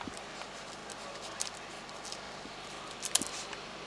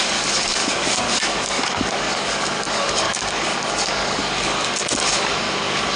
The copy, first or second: second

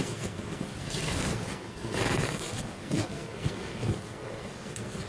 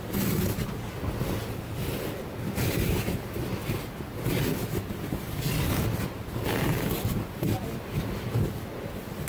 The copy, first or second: first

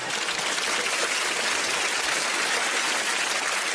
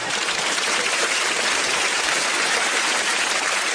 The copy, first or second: second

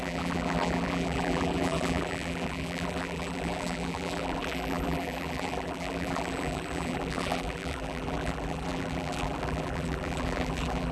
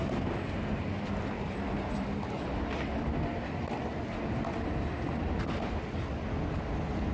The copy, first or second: first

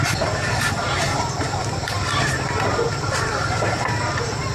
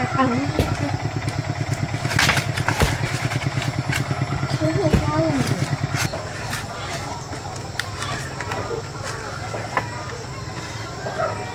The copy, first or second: first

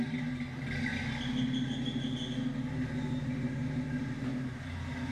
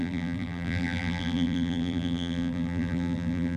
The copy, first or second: second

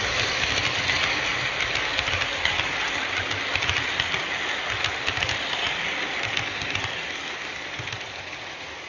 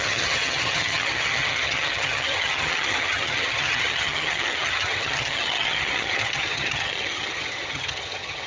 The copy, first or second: second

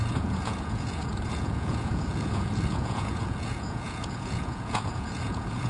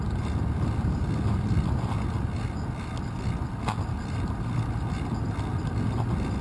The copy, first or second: first